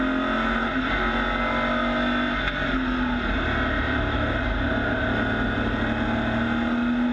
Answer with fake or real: real